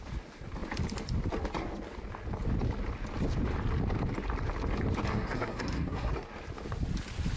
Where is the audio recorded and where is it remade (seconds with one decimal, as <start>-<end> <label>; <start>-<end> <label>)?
0.0-5.1 recorded; 5.1-6.1 remade; 6.1-7.4 recorded